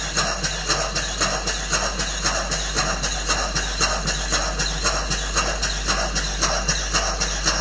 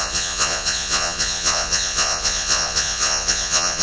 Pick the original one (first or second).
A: first